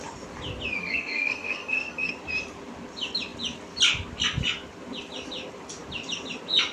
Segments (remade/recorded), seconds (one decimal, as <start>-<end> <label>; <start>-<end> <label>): 0.0-0.8 recorded; 0.8-2.1 remade; 2.1-6.7 recorded